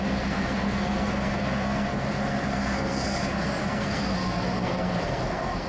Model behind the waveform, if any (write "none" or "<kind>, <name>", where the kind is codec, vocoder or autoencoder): codec, SNAC